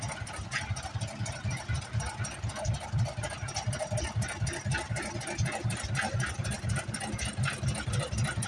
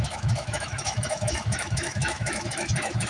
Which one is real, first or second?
first